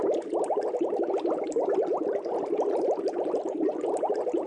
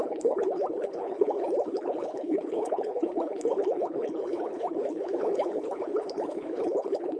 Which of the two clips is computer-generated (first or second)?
second